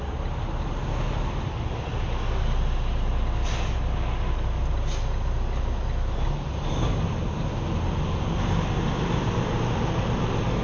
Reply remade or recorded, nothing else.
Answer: recorded